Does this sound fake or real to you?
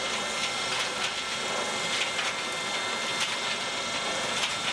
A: real